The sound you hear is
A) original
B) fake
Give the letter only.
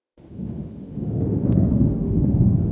B